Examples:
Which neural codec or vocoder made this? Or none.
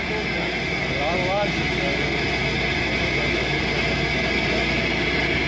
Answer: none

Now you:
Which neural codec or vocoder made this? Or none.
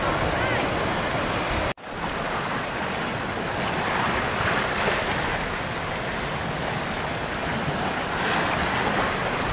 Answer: none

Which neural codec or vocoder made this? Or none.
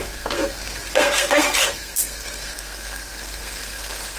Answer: codec, SNAC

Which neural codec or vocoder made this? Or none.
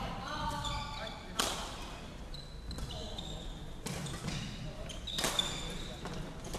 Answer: none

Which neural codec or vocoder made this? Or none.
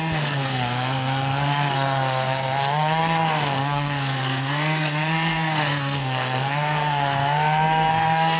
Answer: codec, SNAC